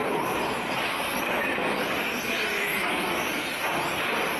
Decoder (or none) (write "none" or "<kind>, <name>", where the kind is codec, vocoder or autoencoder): none